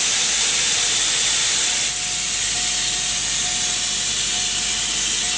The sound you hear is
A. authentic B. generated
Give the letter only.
A